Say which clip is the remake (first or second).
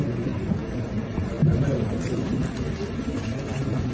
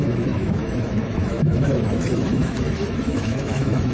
second